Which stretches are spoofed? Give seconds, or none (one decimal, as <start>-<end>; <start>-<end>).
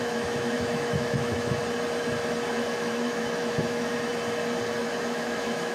0.0-1.6; 2.5-4.1; 4.8-5.7